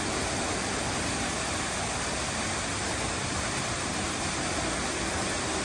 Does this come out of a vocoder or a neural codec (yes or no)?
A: no